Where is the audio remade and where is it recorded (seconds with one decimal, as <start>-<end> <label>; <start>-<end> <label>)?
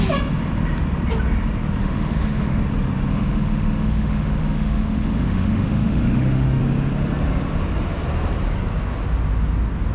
0.0-1.8 recorded; 1.8-2.6 remade; 2.6-3.1 recorded; 3.1-6.6 remade; 6.6-9.9 recorded